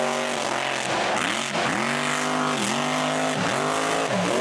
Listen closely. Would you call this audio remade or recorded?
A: recorded